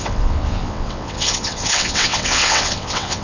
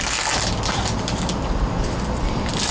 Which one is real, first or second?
second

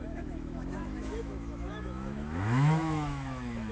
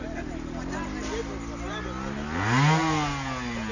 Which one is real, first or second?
second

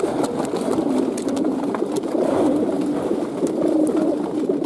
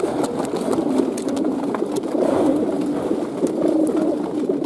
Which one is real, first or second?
second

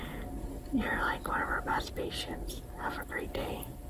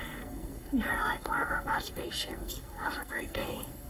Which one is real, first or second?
first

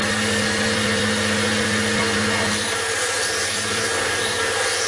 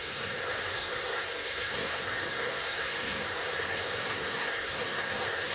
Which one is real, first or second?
first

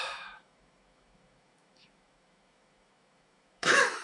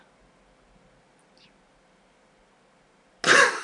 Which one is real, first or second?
second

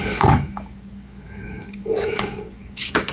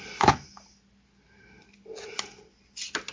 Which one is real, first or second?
second